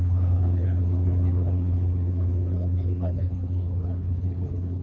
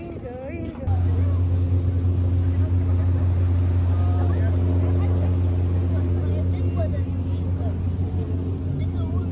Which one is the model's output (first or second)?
first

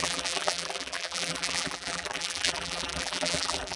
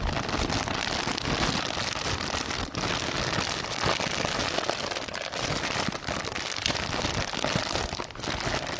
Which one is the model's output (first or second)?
first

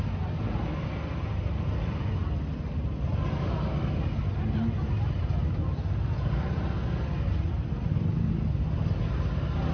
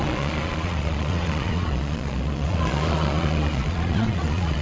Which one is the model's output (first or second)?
second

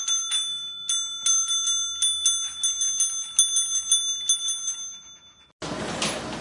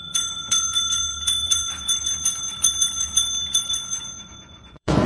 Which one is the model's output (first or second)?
second